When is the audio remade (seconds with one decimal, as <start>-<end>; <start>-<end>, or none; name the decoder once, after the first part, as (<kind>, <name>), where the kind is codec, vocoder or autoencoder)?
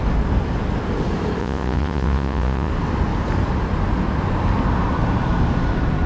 1.4-2.7 (vocoder, Vocos)